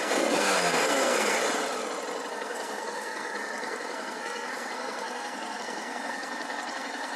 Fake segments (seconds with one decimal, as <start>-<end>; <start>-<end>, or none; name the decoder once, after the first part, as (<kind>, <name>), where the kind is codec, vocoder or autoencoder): 0.0-1.4 (codec, SNAC); 2.3-7.2